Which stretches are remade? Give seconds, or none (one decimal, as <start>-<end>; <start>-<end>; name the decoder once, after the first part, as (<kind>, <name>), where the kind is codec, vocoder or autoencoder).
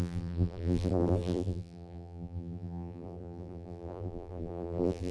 0.0-5.1 (vocoder, BigVGAN v2)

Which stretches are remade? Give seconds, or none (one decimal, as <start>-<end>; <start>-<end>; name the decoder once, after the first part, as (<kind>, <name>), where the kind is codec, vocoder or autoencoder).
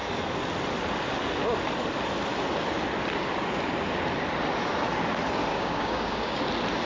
5.5-6.4 (codec, DAC)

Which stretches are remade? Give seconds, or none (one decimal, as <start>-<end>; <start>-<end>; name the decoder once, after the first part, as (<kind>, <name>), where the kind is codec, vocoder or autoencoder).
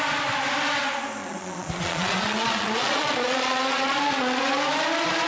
1.2-4.4 (vocoder, Vocos)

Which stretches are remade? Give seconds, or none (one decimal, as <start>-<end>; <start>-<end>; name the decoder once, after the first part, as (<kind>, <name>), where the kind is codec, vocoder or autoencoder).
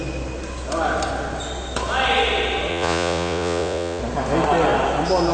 2.7-4.0 (vocoder, Vocos)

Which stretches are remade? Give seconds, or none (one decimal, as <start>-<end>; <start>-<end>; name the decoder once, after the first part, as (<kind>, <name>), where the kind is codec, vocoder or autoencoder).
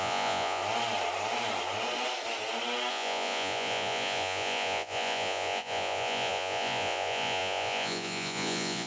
0.0-0.6 (vocoder, Vocos); 2.9-8.9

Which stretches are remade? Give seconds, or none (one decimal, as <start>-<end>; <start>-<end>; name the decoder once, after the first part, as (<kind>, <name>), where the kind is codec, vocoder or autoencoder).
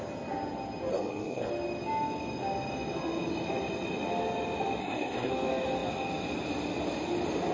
0.9-1.5 (codec, SNAC); 4.8-5.3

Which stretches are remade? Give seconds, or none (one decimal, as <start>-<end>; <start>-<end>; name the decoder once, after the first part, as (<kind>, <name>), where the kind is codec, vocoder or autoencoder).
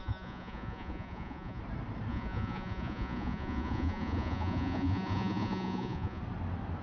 0.0-1.6 (vocoder, Vocos); 2.1-6.2